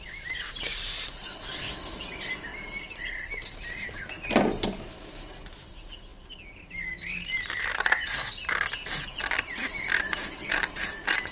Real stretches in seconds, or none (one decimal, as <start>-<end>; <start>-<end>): 0.0-11.3